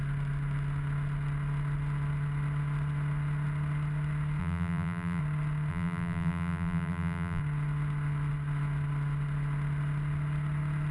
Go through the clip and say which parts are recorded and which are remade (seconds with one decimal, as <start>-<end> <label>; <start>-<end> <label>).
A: 0.0-4.4 recorded; 4.4-5.2 remade; 5.2-5.7 recorded; 5.7-7.4 remade; 7.4-10.9 recorded